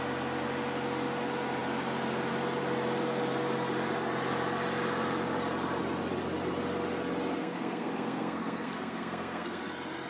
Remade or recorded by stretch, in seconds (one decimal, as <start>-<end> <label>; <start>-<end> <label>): 0.0-7.4 recorded; 7.4-9.6 remade; 9.6-10.1 recorded